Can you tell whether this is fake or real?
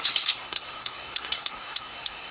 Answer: fake